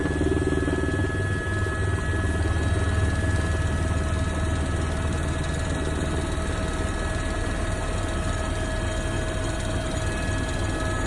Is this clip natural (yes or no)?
yes